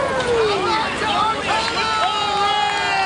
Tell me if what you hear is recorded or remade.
recorded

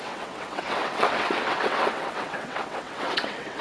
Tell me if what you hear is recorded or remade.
remade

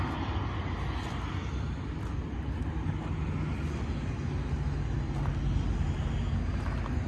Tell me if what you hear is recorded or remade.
recorded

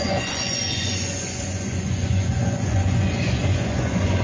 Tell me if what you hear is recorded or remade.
remade